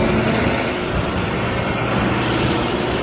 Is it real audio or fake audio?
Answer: real